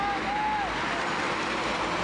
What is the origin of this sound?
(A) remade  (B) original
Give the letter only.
B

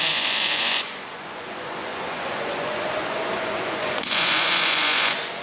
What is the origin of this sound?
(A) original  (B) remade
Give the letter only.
B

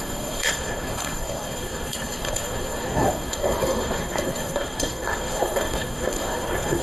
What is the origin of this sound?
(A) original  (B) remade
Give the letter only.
B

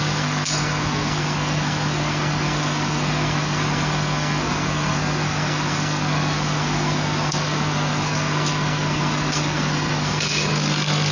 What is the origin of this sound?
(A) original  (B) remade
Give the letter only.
B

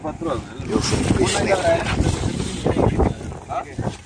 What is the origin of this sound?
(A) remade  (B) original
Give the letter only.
B